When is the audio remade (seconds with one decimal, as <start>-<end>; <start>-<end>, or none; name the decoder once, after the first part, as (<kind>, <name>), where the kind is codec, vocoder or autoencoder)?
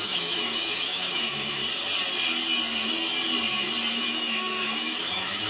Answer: 0.0-1.6 (autoencoder, DAC-VAE); 4.0-5.5